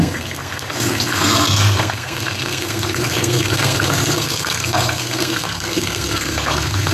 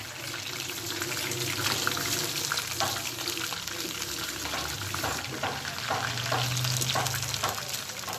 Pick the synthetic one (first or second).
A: first